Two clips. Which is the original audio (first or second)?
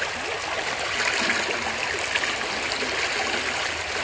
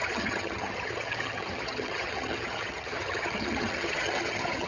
first